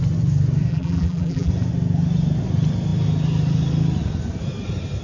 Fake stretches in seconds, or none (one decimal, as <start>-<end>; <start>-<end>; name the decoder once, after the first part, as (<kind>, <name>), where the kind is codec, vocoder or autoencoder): 0.7-1.5 (vocoder, BigVGAN v2)